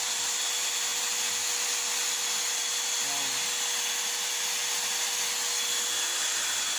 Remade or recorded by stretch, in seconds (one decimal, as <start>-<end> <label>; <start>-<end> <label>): 0.0-6.8 recorded